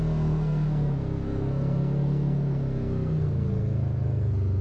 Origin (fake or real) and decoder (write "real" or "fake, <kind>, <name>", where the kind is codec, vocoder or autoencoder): fake, codec, SNAC